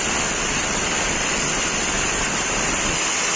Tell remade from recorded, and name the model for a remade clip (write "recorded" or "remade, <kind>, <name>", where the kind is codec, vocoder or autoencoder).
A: recorded